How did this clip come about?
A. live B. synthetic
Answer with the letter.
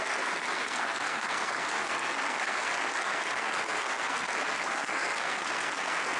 B